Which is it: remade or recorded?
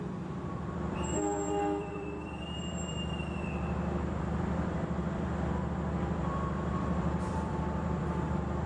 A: remade